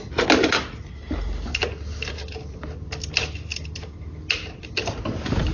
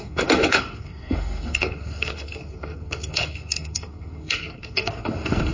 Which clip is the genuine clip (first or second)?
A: first